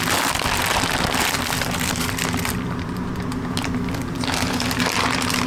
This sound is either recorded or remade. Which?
recorded